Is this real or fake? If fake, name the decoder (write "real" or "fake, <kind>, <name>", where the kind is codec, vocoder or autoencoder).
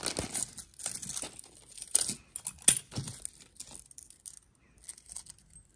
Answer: real